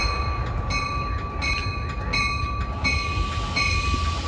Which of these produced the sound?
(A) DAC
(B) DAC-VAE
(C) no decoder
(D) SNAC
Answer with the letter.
C